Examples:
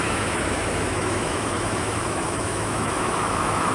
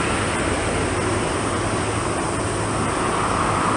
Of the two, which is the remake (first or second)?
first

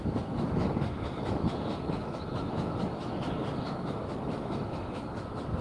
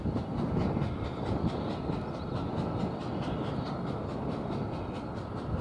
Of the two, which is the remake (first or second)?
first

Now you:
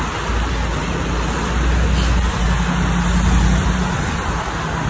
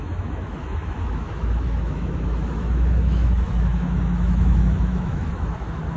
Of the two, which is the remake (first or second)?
second